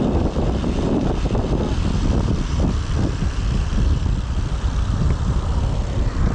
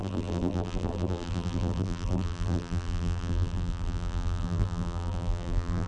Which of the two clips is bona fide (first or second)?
first